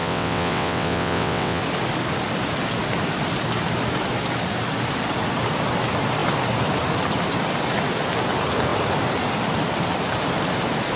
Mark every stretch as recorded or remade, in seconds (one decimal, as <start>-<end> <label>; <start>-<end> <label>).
0.0-1.6 remade; 1.6-11.0 recorded